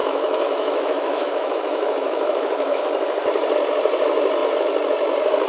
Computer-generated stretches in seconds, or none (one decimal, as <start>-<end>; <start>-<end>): 0.0-2.8